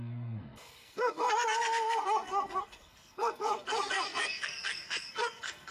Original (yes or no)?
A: no